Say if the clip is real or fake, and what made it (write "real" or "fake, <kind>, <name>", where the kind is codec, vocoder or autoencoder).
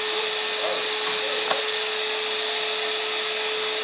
real